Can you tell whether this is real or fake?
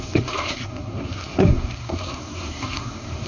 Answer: fake